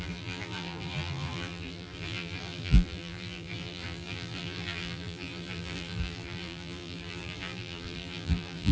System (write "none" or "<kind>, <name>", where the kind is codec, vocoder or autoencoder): vocoder, BigVGAN v2